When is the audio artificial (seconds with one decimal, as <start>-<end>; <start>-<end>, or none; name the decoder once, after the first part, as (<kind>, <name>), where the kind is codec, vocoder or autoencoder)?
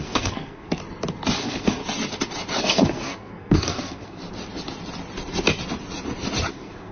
0.0-0.8 (codec, SNAC); 1.4-1.8; 2.6-4.2; 6.5-6.9